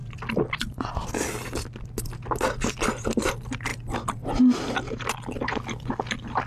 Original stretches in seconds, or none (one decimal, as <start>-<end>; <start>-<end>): 0.0-6.5